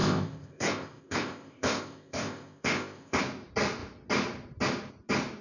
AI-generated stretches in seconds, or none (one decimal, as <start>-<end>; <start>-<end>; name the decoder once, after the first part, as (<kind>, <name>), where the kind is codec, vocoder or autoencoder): 0.0-3.2 (codec, ZipCodec)